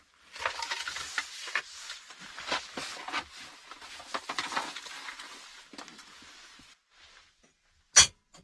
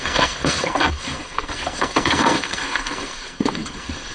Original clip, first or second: first